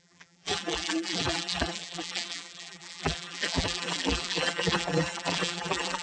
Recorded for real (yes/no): no